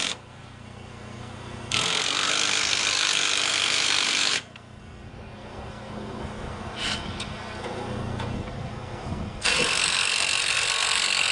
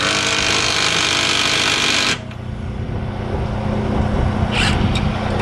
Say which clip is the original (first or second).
second